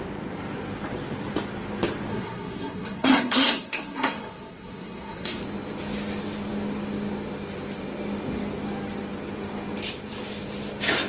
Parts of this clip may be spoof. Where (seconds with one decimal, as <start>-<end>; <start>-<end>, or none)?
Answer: 2.1-5.4